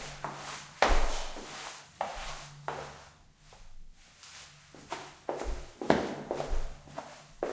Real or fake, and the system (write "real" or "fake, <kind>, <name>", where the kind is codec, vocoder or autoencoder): real